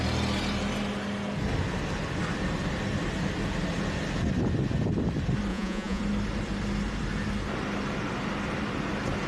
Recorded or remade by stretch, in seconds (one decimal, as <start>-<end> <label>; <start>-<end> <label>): 0.0-5.5 recorded; 5.5-6.0 remade; 6.0-9.3 recorded